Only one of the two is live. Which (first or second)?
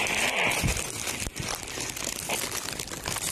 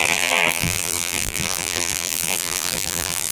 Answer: first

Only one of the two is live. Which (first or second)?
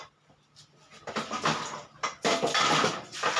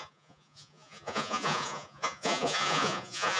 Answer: first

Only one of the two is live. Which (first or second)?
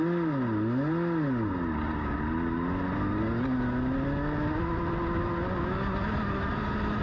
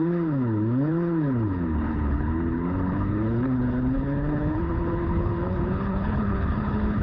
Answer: first